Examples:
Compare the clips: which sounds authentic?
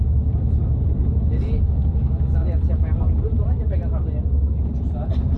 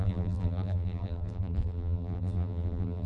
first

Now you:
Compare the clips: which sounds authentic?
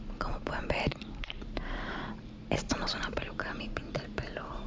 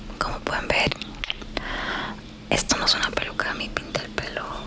second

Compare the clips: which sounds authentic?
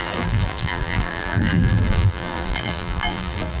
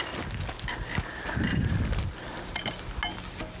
second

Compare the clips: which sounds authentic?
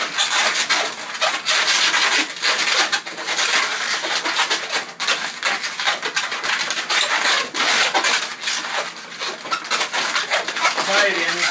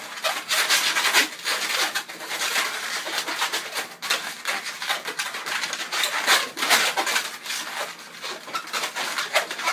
first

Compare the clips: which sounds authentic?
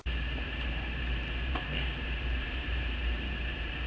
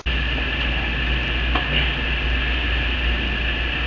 second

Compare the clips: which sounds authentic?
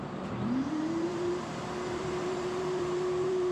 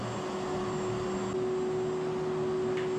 second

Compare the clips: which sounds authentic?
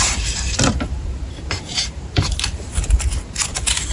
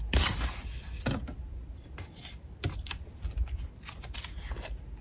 second